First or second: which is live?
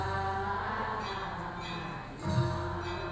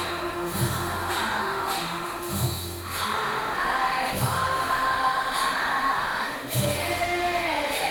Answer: first